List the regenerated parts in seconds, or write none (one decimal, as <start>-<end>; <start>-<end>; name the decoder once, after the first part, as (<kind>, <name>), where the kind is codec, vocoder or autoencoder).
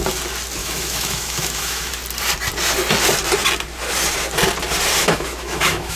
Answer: 0.6-1.9 (autoencoder, DAC-VAE); 5.0-6.0